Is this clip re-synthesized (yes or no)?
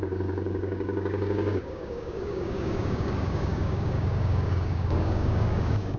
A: yes